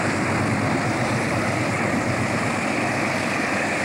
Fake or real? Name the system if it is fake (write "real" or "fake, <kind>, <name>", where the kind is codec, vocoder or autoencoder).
real